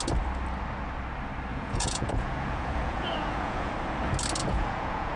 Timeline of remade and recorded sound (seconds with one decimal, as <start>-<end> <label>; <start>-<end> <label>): 0.0-1.5 recorded; 1.5-3.7 remade; 3.7-4.4 recorded; 4.4-5.2 remade